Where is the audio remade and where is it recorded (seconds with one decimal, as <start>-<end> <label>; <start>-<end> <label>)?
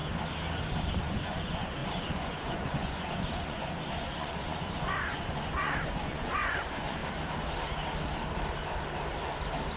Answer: 0.0-1.0 recorded; 1.0-7.0 remade; 7.0-9.8 recorded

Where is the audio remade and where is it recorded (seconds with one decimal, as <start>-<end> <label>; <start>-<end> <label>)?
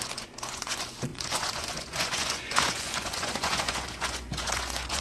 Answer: 0.0-5.0 remade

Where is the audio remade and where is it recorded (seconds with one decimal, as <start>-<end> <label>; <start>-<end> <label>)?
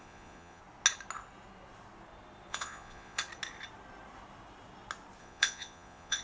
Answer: 0.0-0.6 remade; 0.6-2.5 recorded; 2.5-3.2 remade; 3.2-5.2 recorded; 5.2-6.2 remade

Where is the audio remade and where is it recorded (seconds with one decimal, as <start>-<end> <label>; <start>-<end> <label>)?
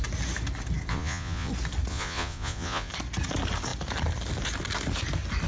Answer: 0.0-0.9 recorded; 0.9-1.5 remade; 1.5-1.9 recorded; 1.9-2.9 remade; 2.9-5.5 recorded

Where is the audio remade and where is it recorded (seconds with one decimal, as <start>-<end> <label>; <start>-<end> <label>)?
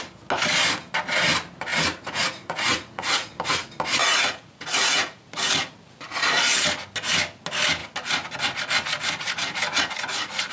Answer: 0.0-1.7 recorded; 1.7-3.3 remade; 3.3-4.0 recorded; 4.0-5.3 remade; 5.3-10.5 recorded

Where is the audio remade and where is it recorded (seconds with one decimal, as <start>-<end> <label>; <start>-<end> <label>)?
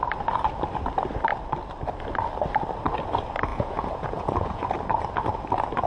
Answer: 0.0-3.5 recorded; 3.5-4.7 remade; 4.7-5.9 recorded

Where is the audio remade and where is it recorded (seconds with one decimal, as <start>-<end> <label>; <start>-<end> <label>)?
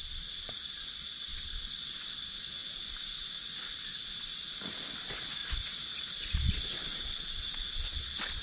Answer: 0.0-2.6 remade; 2.6-5.0 recorded; 5.0-8.4 remade